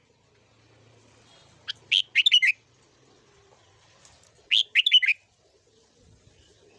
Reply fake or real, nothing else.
real